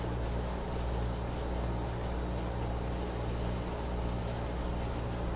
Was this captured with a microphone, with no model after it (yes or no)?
yes